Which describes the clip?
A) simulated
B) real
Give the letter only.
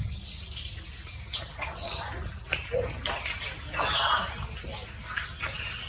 B